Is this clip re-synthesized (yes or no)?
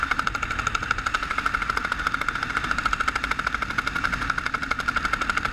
no